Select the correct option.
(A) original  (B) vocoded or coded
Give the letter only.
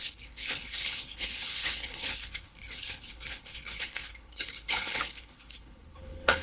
B